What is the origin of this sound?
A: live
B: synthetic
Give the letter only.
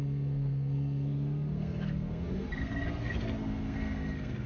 B